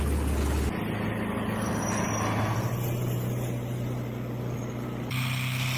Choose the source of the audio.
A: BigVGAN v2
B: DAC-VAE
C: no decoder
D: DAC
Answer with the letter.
C